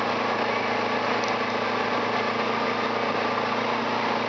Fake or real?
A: real